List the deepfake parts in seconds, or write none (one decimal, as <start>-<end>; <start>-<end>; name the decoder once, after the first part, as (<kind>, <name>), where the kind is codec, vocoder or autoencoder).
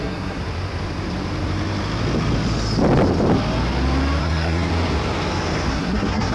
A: 0.0-0.4 (codec, SNAC); 4.2-4.7; 5.7-6.3